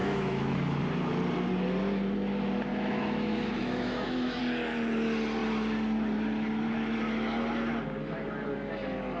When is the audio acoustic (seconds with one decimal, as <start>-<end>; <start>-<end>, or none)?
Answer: 0.8-2.7; 4.4-9.2